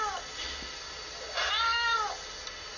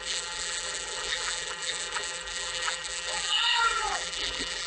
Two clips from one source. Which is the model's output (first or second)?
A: second